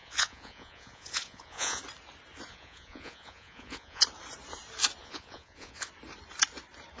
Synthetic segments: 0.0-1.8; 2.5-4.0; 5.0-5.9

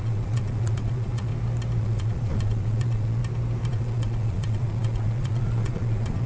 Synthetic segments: 0.0-1.3; 1.8-3.2; 3.7-6.3

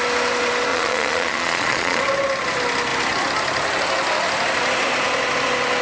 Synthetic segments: 0.7-2.0

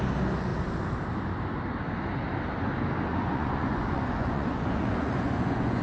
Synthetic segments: 3.1-5.8

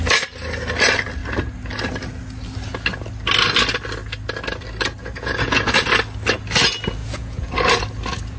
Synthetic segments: 5.0-5.6; 7.0-7.5